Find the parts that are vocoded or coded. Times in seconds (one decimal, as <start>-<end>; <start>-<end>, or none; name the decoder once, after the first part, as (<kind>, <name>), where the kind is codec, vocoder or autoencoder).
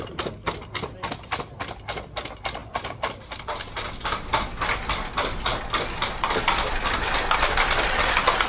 none